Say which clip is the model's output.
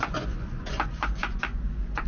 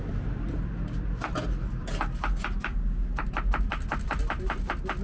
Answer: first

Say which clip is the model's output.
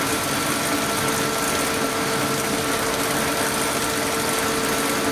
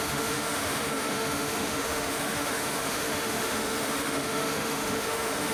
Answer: second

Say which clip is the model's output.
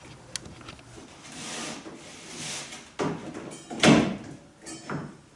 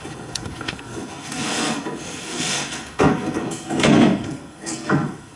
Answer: second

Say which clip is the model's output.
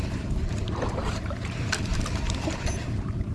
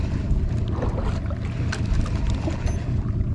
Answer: first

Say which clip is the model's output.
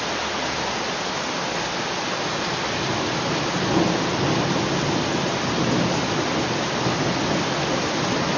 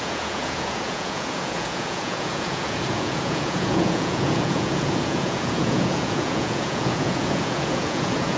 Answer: second